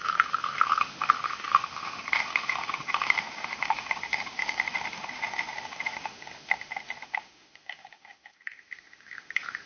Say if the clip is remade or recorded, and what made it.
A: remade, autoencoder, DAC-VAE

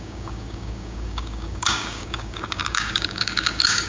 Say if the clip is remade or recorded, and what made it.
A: remade, codec, DAC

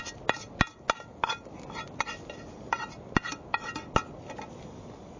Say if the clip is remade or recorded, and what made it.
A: recorded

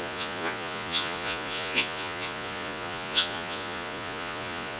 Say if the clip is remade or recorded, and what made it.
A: remade, vocoder, Vocos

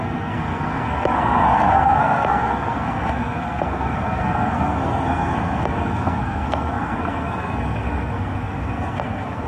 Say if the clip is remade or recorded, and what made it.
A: remade, codec, SNAC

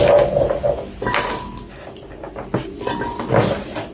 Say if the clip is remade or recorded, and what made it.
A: recorded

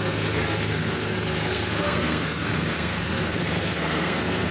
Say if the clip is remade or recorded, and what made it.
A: remade, codec, SNAC